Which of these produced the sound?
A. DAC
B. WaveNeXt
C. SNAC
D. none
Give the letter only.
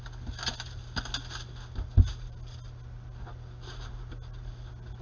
D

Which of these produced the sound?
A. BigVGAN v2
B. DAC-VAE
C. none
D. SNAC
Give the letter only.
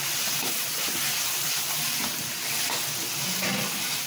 A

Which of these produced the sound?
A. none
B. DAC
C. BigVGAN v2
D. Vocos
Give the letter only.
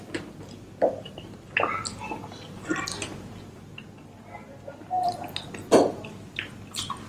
A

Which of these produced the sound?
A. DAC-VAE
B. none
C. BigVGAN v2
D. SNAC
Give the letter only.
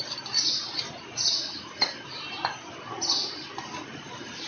B